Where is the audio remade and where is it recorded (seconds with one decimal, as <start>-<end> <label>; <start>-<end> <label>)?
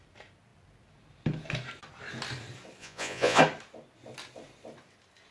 0.0-2.8 recorded; 2.8-3.4 remade; 3.4-5.3 recorded